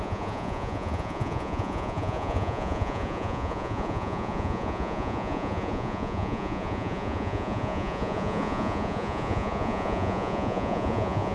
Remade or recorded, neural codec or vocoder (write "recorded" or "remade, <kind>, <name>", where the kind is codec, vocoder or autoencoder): remade, vocoder, Vocos